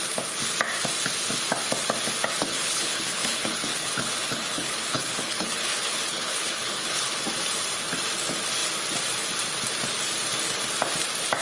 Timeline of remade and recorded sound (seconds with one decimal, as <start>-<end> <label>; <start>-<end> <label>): 0.0-2.5 recorded; 2.5-7.2 remade; 7.2-11.4 recorded